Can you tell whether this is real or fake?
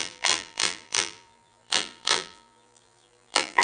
fake